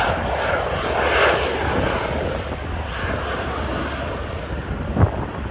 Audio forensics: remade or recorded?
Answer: recorded